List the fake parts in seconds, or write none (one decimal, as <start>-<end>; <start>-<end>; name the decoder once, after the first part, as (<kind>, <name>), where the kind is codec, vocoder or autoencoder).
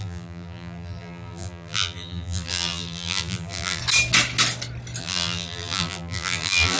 0.0-3.8 (vocoder, BigVGAN v2); 5.0-6.8